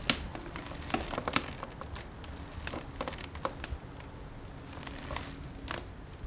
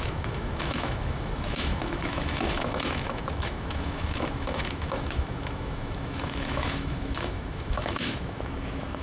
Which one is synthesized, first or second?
second